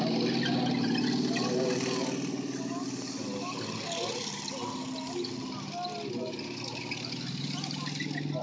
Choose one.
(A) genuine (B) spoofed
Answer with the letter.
A